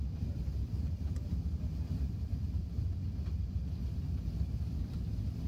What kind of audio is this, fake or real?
fake